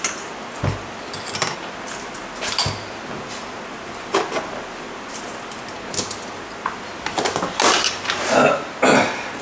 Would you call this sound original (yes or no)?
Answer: yes